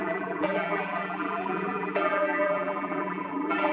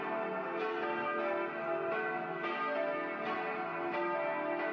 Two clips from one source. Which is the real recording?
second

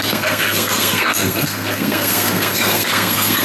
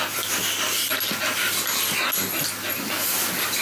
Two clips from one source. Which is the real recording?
second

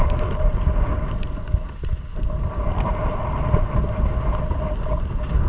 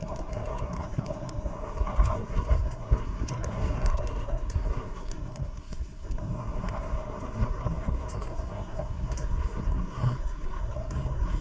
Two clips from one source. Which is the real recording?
first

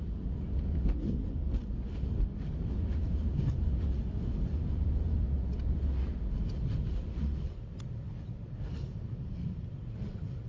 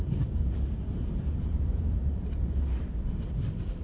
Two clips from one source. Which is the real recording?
first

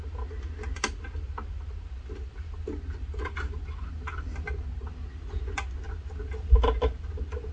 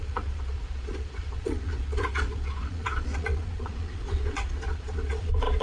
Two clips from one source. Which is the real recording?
first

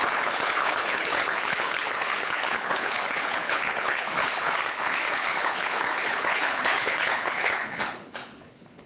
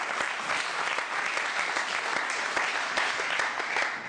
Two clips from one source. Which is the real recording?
second